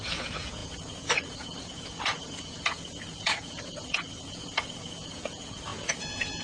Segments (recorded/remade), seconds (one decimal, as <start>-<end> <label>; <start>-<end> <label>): 0.0-6.4 remade